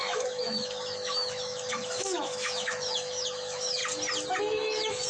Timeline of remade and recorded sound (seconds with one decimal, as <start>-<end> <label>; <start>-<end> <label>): 0.0-3.8 remade; 3.8-4.4 recorded; 4.4-5.1 remade